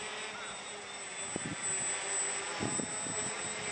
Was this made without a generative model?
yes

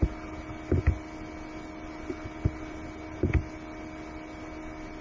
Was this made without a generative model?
yes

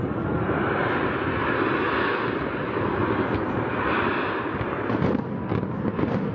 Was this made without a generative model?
yes